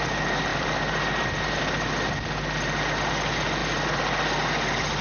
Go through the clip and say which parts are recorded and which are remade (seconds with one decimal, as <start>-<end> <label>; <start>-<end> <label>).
0.0-0.5 recorded; 0.5-1.6 remade; 1.6-5.0 recorded

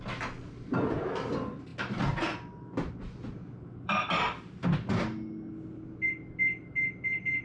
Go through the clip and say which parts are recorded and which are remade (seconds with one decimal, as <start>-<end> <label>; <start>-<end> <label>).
0.0-7.4 recorded

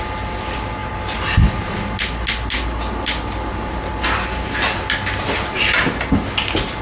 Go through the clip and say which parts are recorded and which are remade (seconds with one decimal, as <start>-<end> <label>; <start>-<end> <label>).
0.0-6.8 recorded